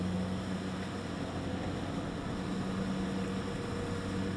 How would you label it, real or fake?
real